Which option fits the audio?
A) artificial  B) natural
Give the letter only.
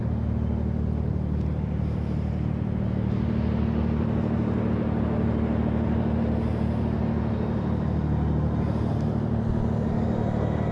B